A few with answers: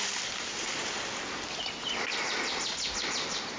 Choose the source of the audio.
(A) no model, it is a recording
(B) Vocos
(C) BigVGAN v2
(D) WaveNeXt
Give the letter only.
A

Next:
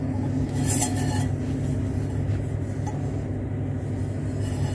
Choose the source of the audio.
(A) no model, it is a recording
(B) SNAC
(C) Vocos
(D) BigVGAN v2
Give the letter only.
A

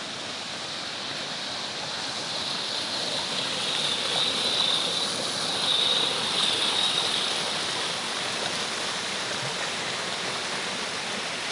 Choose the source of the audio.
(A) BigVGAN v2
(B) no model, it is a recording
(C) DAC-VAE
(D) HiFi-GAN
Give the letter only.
B